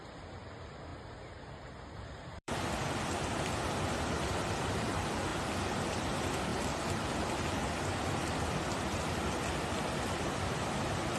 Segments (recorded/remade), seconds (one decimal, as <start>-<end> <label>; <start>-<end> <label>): 0.0-0.9 remade; 0.9-2.0 recorded; 2.0-6.5 remade; 6.5-7.6 recorded; 7.6-11.2 remade